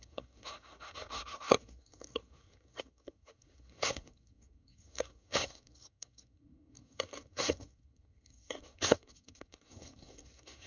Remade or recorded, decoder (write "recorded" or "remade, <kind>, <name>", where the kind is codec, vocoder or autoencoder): remade, codec, SNAC